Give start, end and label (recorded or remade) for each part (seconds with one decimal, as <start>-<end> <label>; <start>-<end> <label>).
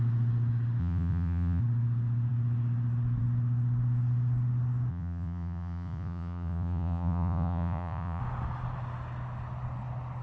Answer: 0.0-0.8 recorded; 0.8-1.6 remade; 1.6-4.9 recorded; 4.9-8.2 remade; 8.2-10.2 recorded